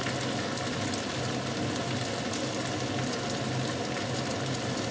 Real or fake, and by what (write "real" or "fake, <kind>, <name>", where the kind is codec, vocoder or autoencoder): real